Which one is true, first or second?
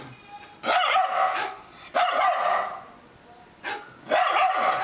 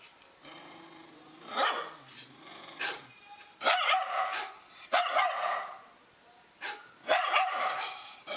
first